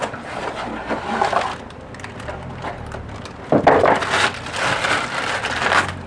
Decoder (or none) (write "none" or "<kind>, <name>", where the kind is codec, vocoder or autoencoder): none